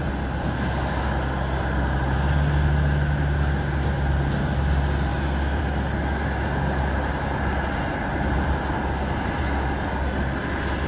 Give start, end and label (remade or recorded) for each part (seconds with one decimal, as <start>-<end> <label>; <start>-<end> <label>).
0.0-10.9 recorded